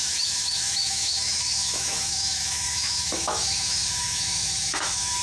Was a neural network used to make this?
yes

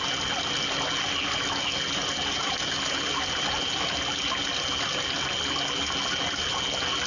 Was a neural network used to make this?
no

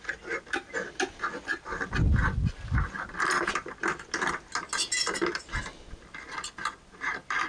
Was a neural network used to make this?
no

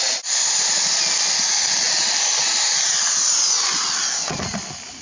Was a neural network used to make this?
no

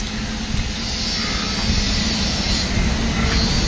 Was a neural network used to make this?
no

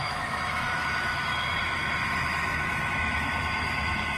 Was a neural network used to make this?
yes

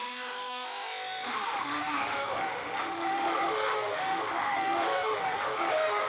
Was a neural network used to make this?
yes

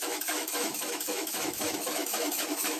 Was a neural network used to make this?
yes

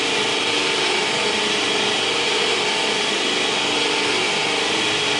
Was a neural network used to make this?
no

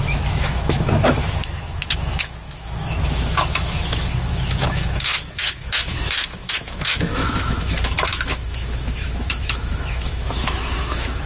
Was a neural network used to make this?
yes